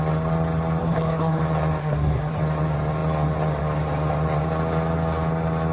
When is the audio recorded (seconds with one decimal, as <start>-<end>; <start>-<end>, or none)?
0.0-0.8; 1.4-1.8; 2.4-5.7